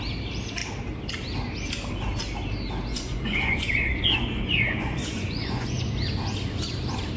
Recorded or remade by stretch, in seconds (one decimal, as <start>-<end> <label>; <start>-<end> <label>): 0.0-2.9 recorded; 2.9-5.9 remade; 5.9-7.2 recorded